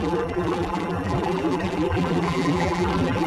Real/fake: fake